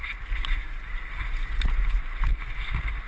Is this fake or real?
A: real